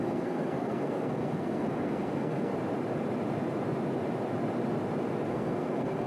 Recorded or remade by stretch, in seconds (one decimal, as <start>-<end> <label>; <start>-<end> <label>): 0.0-2.5 remade; 2.5-5.3 recorded; 5.3-6.1 remade